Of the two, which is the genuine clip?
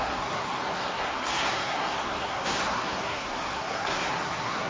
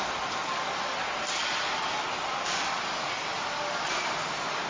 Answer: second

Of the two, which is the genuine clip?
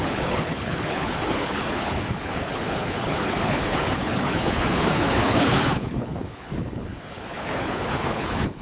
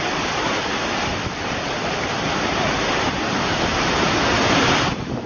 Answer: second